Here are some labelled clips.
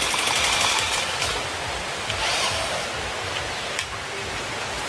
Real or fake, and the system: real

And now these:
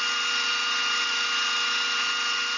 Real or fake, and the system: real